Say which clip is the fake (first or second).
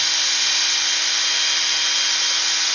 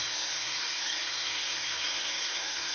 second